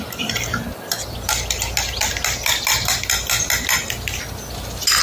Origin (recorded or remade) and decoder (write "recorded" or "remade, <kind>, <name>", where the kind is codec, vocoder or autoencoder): recorded